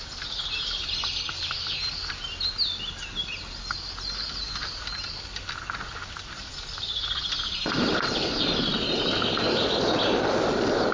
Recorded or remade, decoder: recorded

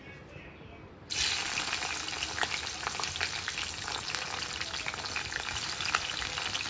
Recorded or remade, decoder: recorded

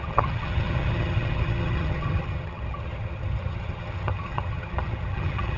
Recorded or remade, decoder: remade, vocoder, HiFi-GAN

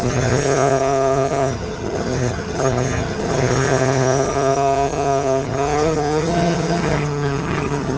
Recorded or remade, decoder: remade, vocoder, HiFi-GAN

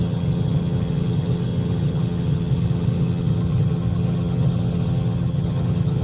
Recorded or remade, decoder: remade, vocoder, HiFi-GAN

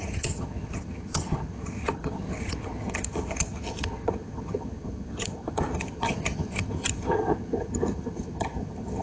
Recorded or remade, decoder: remade, vocoder, HiFi-GAN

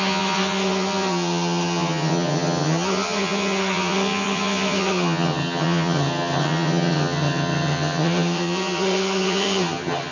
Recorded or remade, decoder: remade, vocoder, HiFi-GAN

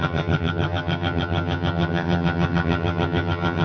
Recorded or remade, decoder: remade, vocoder, HiFi-GAN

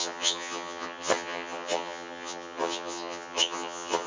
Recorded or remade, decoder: remade, vocoder, HiFi-GAN